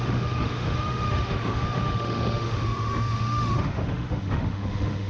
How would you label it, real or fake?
fake